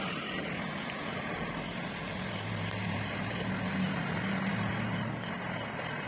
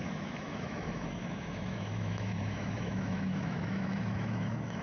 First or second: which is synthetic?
second